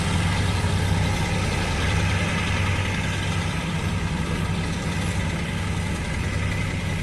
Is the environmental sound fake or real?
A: real